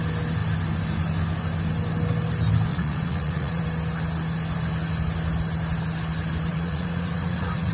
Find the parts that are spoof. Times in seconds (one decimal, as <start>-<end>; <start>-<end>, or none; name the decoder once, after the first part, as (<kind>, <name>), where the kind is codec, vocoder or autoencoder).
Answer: 2.7-3.6 (vocoder, Vocos); 6.5-7.7